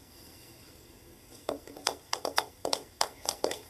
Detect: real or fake fake